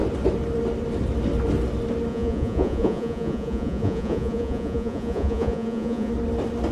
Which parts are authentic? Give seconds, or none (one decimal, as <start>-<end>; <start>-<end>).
0.0-2.1; 6.1-6.7